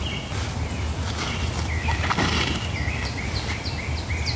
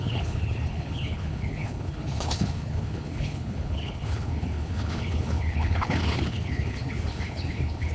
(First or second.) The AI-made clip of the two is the second